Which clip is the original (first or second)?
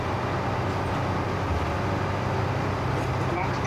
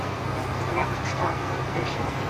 first